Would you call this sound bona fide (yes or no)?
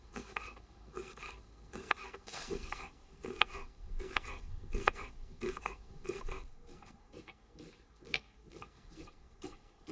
no